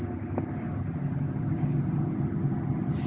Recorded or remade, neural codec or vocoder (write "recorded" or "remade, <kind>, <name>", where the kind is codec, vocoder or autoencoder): recorded